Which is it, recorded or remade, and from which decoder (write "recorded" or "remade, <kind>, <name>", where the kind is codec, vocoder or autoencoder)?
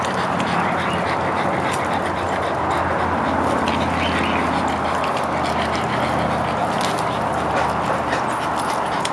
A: recorded